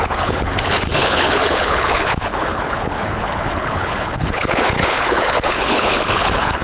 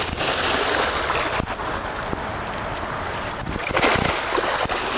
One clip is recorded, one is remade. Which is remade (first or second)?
first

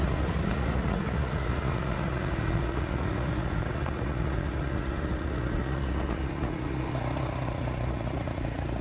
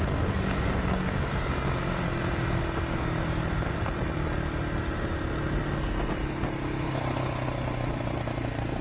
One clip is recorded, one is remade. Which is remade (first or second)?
first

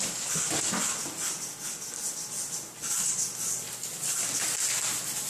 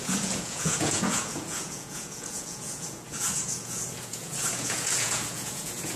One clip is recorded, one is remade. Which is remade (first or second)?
second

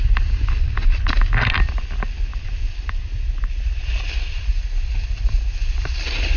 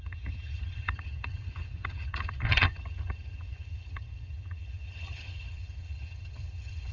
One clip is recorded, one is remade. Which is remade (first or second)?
second